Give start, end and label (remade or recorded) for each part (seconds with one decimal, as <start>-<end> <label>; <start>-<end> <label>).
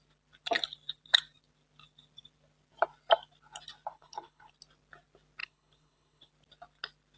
0.0-3.9 recorded; 3.9-4.5 remade; 4.5-5.4 recorded; 5.4-6.3 remade; 6.3-7.2 recorded